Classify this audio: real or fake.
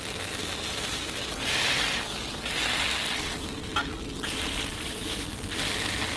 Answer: real